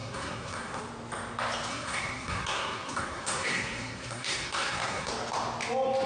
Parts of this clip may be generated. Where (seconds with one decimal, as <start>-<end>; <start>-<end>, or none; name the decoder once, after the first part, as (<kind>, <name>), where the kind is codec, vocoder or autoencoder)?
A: 0.0-0.8 (codec, SNAC); 1.7-5.1